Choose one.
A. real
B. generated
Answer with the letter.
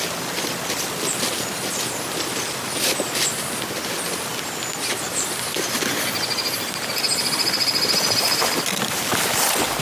A